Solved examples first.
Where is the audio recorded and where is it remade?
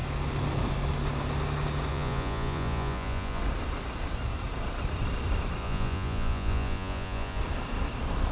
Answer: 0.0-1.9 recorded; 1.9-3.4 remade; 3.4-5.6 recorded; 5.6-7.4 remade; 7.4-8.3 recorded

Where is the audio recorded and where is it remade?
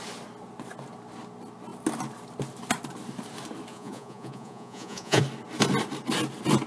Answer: 0.0-3.7 recorded; 3.7-5.2 remade; 5.2-6.7 recorded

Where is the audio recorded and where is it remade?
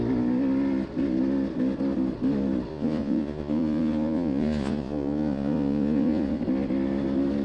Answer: 0.0-2.7 recorded; 2.7-6.4 remade; 6.4-7.4 recorded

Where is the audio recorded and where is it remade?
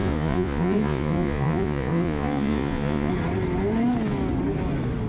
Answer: 0.0-3.1 remade; 3.1-5.1 recorded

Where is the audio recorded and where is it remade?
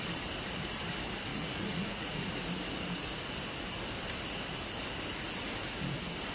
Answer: 0.0-1.3 recorded; 1.3-2.3 remade; 2.3-6.3 recorded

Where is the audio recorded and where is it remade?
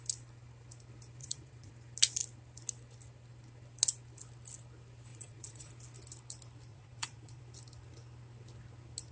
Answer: 0.0-1.2 recorded; 1.2-1.7 remade; 1.7-5.1 recorded; 5.1-5.7 remade; 5.7-6.7 recorded; 6.7-7.4 remade; 7.4-9.1 recorded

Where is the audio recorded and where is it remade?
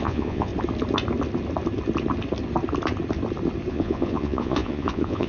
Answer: 0.0-0.5 remade; 0.5-3.7 recorded; 3.7-5.3 remade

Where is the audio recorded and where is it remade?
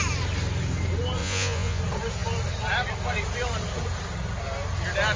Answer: 0.0-1.2 recorded; 1.2-1.8 remade; 1.8-5.2 recorded